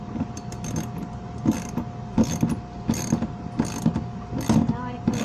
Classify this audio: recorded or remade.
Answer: recorded